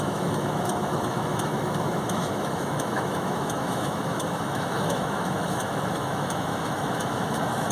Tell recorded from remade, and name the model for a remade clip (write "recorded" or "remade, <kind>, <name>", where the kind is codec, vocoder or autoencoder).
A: remade, autoencoder, DAC-VAE